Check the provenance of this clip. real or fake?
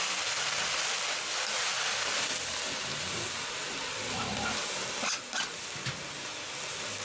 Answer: real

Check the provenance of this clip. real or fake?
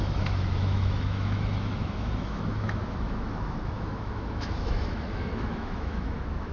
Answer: fake